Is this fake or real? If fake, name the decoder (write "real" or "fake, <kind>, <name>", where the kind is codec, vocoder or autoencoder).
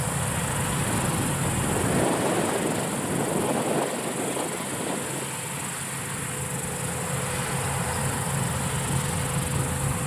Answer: real